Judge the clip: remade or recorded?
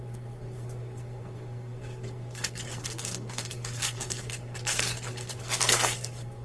remade